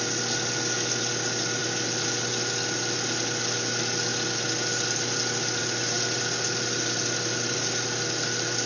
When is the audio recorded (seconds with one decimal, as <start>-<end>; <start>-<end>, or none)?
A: 0.0-8.7